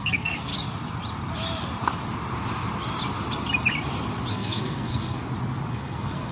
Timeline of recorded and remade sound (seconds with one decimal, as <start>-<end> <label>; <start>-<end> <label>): 0.0-0.5 remade; 0.5-4.3 recorded; 4.3-5.2 remade; 5.2-5.7 recorded; 5.7-6.3 remade